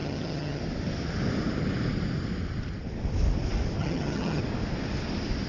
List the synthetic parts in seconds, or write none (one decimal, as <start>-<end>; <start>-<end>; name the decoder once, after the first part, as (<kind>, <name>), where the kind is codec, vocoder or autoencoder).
0.0-0.6 (vocoder, HiFi-GAN); 3.8-4.4